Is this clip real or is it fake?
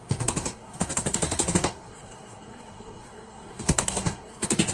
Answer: fake